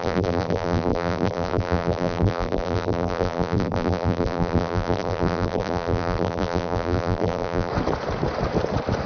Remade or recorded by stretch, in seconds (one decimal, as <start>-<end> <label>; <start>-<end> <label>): 0.0-7.7 remade; 7.7-9.1 recorded